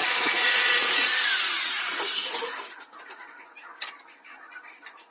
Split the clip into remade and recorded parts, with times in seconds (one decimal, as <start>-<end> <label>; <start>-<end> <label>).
0.0-3.7 remade; 3.7-4.5 recorded; 4.5-5.1 remade